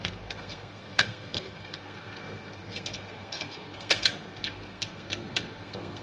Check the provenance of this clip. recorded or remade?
remade